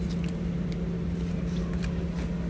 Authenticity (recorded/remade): recorded